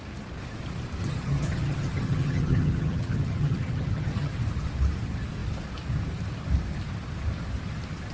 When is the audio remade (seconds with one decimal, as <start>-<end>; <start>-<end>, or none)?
1.0-4.3